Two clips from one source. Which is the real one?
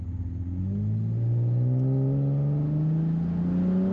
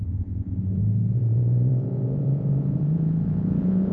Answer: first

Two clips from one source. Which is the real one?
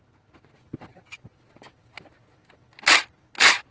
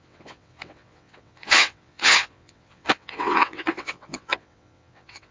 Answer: first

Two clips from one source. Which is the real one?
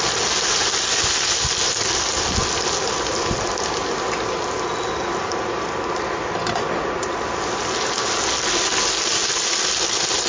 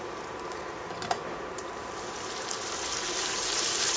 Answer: first